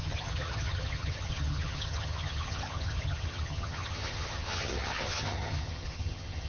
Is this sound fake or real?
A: fake